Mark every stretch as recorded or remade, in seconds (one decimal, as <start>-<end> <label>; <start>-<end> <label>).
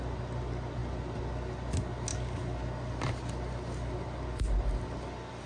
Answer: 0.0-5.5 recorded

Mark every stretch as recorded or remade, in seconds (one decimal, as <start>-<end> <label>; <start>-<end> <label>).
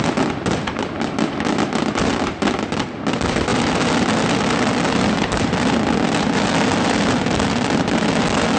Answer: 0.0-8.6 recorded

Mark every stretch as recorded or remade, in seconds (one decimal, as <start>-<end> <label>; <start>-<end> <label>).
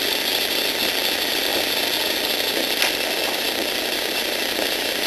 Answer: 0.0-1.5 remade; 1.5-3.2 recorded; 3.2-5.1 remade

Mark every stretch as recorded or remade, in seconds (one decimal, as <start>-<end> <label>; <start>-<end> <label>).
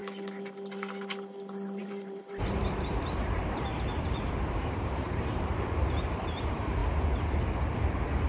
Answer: 0.0-1.8 recorded; 1.8-6.8 remade; 6.8-7.7 recorded; 7.7-8.3 remade